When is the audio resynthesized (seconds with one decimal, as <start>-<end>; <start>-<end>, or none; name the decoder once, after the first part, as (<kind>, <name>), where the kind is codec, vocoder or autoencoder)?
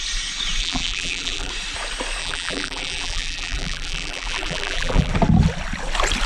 0.6-1.5 (vocoder, BigVGAN v2); 2.2-5.1